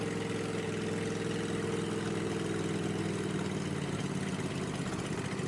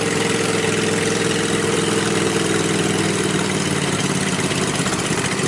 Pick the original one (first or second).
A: first